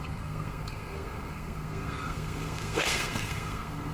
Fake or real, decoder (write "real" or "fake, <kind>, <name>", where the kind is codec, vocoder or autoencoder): fake, codec, SNAC